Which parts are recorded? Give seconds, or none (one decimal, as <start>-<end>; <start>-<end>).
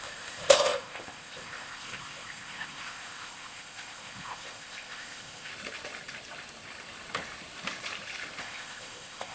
5.5-8.4